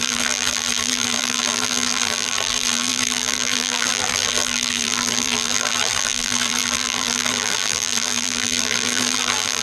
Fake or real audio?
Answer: fake